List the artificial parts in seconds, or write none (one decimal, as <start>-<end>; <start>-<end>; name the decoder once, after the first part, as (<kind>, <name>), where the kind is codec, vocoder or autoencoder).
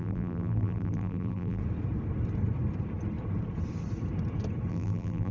0.0-1.6 (vocoder, BigVGAN v2); 4.7-5.3